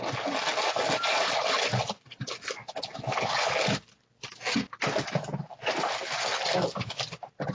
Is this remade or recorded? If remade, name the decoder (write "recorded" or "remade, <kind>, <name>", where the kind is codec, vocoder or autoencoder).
recorded